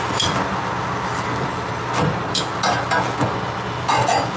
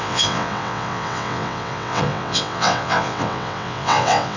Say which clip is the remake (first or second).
second